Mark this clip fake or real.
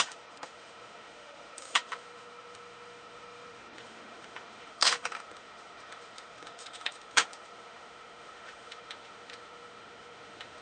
fake